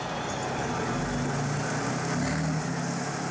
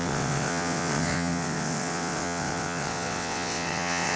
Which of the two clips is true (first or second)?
first